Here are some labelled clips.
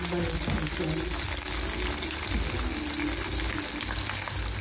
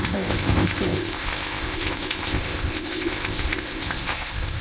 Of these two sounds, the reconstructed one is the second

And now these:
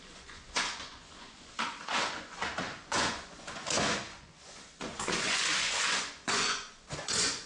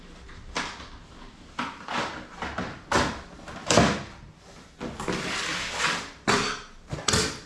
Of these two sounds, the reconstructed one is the first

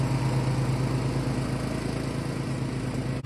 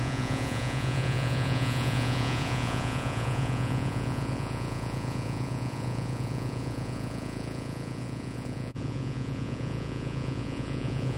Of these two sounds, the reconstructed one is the second